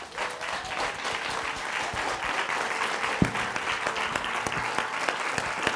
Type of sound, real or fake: real